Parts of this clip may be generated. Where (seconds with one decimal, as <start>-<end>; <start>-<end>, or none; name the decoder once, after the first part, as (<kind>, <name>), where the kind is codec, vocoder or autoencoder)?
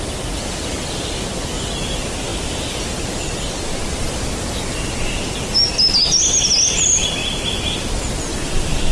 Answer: none